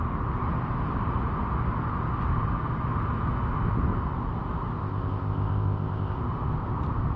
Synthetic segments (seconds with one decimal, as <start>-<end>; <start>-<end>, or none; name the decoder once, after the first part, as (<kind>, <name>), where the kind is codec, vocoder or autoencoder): 4.8-6.2 (codec, ZipCodec)